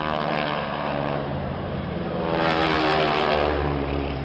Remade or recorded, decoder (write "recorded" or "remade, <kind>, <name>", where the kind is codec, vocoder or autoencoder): remade, vocoder, BigVGAN v2